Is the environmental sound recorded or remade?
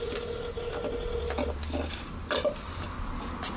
recorded